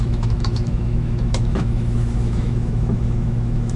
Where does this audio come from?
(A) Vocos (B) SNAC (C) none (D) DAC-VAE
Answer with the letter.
D